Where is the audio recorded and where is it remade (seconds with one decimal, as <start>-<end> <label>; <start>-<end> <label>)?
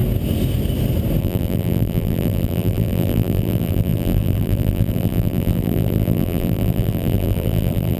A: 0.0-1.2 recorded; 1.2-8.0 remade